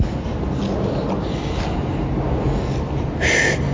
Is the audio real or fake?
real